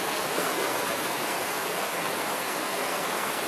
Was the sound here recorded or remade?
remade